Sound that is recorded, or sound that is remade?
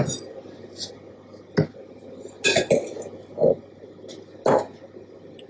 recorded